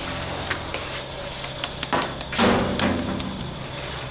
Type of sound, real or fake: real